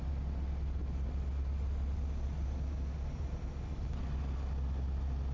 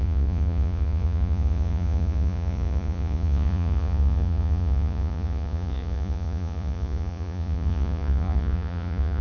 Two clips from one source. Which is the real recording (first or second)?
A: first